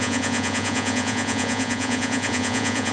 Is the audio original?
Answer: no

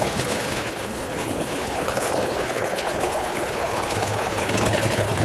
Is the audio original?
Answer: no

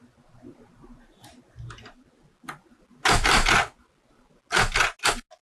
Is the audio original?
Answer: yes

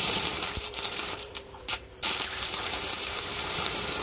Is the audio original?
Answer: no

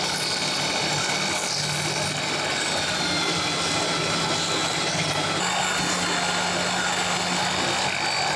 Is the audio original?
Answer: yes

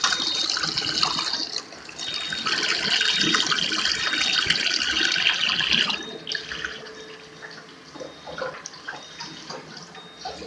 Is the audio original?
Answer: yes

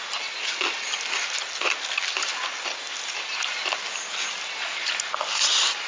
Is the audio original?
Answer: yes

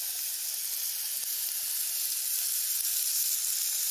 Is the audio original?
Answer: yes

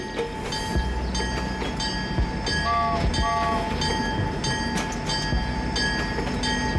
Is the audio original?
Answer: yes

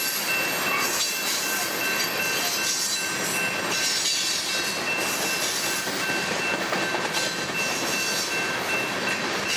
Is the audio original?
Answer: yes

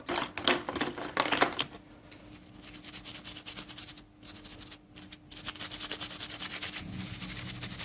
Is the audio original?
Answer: yes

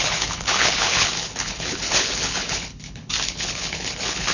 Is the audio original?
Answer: no